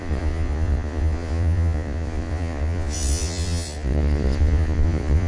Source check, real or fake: fake